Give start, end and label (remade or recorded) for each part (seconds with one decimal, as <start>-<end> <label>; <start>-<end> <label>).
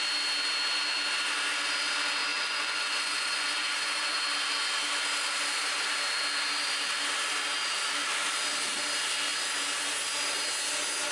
0.0-2.3 recorded; 2.3-4.2 remade; 4.2-11.1 recorded